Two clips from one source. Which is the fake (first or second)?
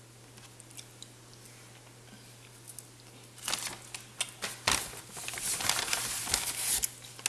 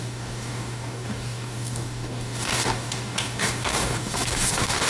second